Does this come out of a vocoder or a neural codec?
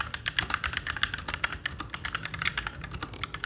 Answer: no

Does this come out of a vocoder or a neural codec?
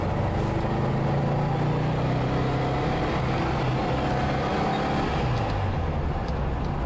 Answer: no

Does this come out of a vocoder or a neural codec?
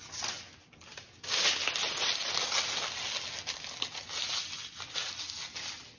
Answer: no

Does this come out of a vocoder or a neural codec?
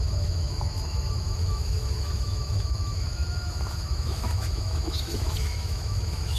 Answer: yes